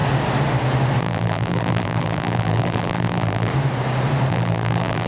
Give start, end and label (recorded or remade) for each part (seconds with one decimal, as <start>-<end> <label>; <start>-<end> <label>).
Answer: 0.0-1.0 recorded; 1.0-3.5 remade; 3.5-4.3 recorded; 4.3-5.1 remade